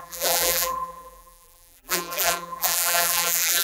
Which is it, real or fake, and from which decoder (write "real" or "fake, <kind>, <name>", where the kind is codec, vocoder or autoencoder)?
fake, vocoder, BigVGAN v2